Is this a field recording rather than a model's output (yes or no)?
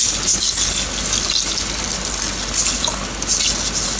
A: yes